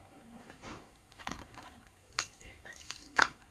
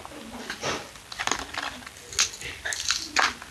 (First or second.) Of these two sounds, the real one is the second